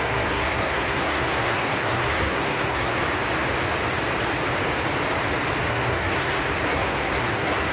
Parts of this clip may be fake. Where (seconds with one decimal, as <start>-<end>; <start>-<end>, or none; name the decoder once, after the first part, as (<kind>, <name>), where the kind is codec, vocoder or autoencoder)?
0.0-3.0 (codec, SNAC); 5.7-7.7